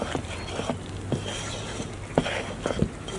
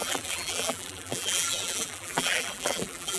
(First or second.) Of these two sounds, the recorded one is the first